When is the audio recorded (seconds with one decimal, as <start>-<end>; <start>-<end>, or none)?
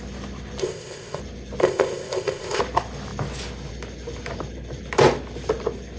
0.0-0.6; 1.2-1.6; 2.6-6.0